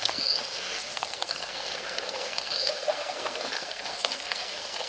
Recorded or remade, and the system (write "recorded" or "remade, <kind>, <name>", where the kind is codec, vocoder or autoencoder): remade, codec, SNAC